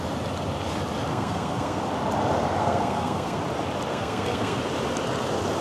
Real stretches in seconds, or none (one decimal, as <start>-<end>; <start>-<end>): 0.0-1.1; 1.8-2.6; 3.4-3.9; 4.6-5.6